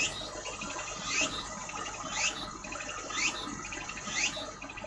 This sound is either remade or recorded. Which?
recorded